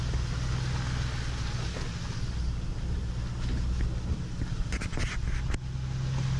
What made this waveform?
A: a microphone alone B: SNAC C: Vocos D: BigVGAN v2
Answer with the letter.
A